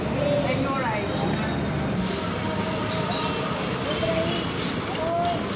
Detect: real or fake real